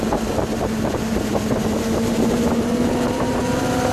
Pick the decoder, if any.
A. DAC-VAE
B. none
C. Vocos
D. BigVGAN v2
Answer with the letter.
D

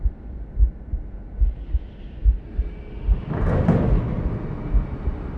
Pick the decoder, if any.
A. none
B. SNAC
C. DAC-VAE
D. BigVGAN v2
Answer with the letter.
A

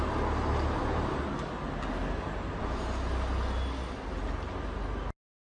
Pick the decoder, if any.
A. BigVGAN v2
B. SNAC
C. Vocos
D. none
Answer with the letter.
D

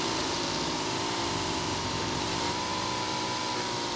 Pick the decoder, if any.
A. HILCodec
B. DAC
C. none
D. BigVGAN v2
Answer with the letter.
D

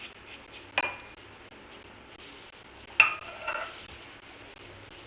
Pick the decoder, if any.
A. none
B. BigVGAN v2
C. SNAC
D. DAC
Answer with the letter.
A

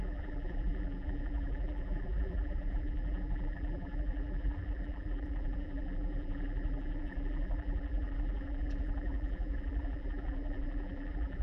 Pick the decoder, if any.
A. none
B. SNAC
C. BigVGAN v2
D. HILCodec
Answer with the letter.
C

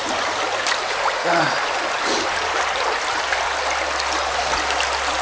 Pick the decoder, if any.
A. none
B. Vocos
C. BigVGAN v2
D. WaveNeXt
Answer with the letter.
A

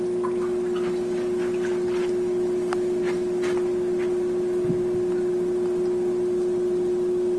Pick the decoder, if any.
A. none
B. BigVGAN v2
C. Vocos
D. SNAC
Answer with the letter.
A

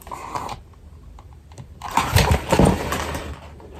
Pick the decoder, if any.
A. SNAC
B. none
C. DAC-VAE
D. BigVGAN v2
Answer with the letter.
D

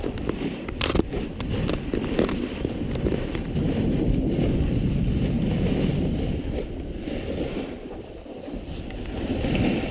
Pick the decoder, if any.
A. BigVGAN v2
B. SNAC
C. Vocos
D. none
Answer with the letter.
A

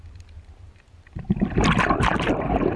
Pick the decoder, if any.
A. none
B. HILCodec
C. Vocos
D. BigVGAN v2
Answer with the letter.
D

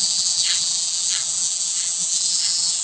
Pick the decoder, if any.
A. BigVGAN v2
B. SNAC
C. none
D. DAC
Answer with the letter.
A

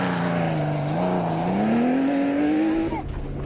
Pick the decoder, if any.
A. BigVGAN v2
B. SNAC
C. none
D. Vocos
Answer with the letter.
C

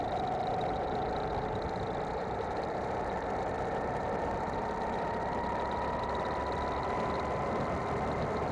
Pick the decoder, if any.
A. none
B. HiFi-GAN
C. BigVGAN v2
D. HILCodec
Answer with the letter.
C